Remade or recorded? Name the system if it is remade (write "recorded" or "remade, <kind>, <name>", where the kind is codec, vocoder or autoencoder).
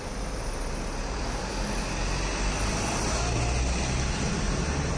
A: recorded